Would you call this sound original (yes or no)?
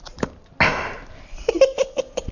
yes